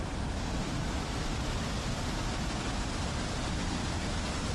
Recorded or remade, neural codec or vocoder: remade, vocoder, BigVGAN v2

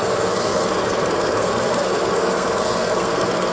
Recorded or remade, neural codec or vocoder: remade, codec, SNAC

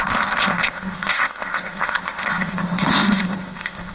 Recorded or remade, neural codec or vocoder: remade, codec, ZipCodec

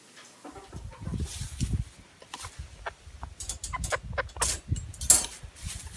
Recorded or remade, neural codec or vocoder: recorded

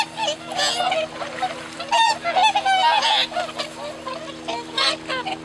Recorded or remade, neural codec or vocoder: recorded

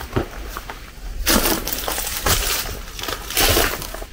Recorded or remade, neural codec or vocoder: recorded